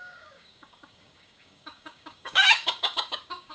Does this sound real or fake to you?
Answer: fake